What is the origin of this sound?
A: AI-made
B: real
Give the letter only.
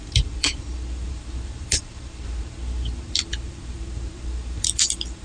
A